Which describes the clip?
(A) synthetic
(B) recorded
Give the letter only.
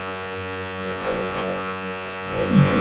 A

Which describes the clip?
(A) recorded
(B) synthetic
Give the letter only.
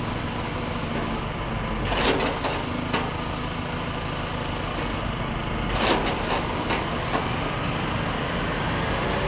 A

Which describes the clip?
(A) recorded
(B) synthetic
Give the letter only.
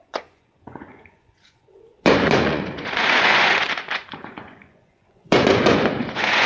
B